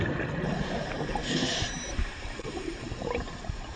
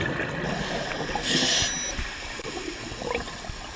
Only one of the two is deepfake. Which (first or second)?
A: first